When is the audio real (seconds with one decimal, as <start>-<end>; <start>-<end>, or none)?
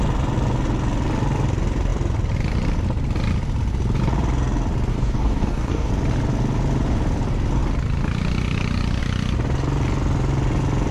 0.0-4.9; 5.9-10.9